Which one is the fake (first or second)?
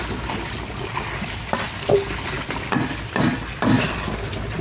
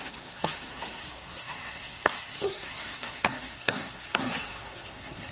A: second